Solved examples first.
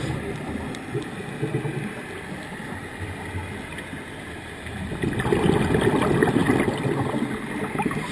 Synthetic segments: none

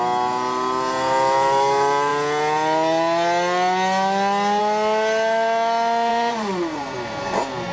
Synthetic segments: 6.1-7.2 (vocoder, BigVGAN v2)

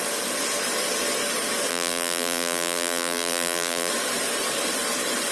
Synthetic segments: 1.7-3.9 (vocoder, BigVGAN v2)

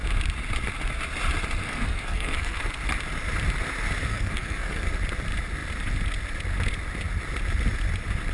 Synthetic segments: 1.6-2.6 (codec, SNAC); 4.1-4.9